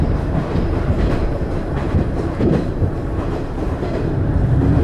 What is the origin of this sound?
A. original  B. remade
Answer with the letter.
B